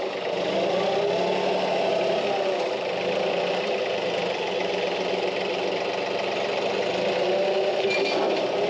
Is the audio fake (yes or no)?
no